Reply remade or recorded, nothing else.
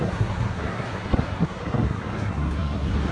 remade